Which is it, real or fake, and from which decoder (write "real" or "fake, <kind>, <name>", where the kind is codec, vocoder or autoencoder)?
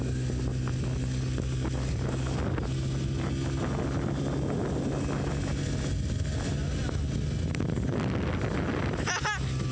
real